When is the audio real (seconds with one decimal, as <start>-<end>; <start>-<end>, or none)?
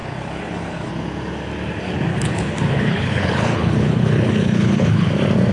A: 0.9-2.1; 5.1-5.5